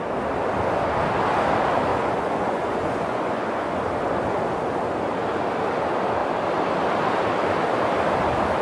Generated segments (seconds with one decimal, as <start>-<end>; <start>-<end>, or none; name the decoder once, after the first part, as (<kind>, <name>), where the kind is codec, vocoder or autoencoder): 1.9-3.8 (vocoder, Vocos)